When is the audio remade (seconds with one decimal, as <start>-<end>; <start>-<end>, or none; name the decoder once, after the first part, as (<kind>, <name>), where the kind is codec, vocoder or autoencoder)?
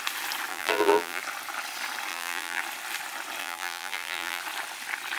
0.5-1.2 (vocoder, BigVGAN v2); 2.1-2.6; 3.4-4.4